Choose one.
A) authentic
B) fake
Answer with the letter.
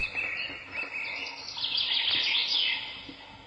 A